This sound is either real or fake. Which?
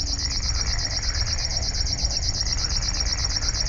real